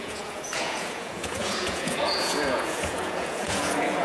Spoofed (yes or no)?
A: yes